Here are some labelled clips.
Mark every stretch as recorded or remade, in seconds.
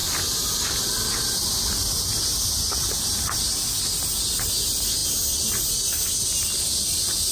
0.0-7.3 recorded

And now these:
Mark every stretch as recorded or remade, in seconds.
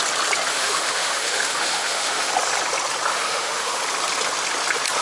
0.0-0.5 recorded; 0.5-2.3 remade; 2.3-3.1 recorded; 3.1-3.8 remade; 3.8-5.0 recorded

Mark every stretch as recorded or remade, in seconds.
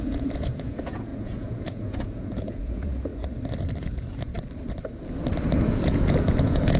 0.0-3.1 remade; 3.1-3.8 recorded; 3.8-4.3 remade; 4.3-5.7 recorded; 5.7-6.8 remade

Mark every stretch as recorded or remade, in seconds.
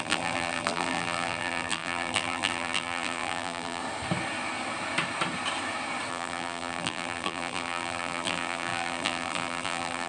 0.0-3.8 remade; 3.8-6.1 recorded; 6.1-10.1 remade